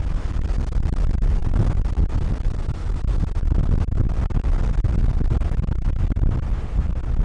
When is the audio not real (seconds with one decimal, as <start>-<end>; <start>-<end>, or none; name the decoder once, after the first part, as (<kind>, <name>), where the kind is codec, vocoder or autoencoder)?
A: none